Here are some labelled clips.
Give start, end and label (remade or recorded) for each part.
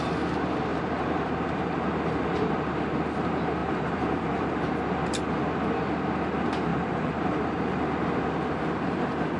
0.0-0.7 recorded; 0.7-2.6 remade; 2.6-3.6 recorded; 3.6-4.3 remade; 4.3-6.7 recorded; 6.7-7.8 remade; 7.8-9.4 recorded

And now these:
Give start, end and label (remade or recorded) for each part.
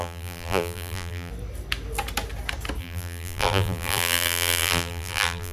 0.0-1.3 remade; 1.3-2.8 recorded; 2.8-5.5 remade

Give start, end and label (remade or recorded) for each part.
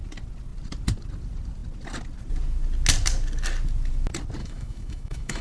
0.0-4.4 recorded; 4.4-5.4 remade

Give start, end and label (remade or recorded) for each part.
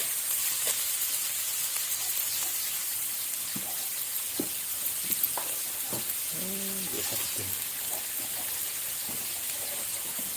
0.0-10.4 recorded